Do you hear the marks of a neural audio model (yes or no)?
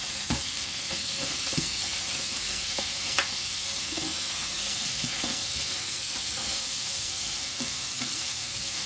yes